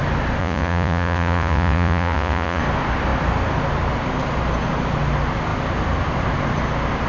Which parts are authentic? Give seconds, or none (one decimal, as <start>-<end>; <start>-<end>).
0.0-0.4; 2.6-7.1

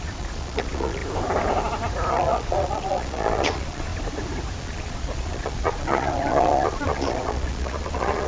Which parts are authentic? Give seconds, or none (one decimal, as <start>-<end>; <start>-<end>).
1.0-2.1; 3.9-4.6

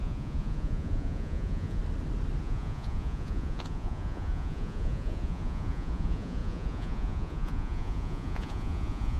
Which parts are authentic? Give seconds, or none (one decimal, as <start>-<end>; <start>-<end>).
1.8-2.4

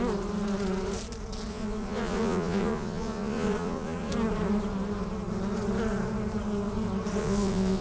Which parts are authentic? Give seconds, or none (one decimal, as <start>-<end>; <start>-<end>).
0.0-1.5; 4.1-7.2